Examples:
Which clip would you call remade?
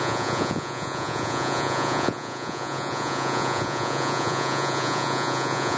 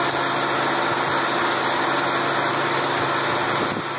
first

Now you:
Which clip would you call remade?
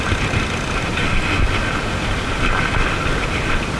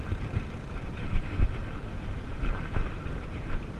second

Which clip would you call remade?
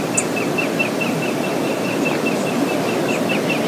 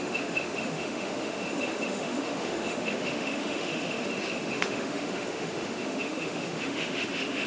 second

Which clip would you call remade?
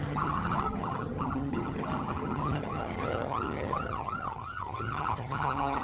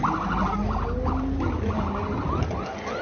first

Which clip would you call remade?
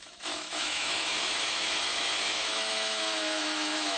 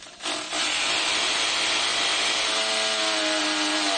first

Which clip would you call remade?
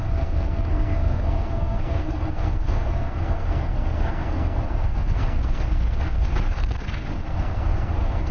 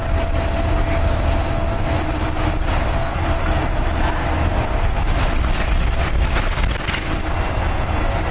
first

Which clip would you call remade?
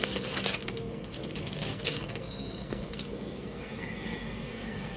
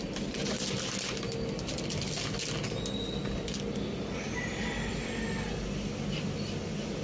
first